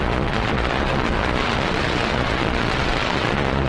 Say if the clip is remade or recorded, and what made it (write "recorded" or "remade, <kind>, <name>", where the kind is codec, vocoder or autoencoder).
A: remade, vocoder, Vocos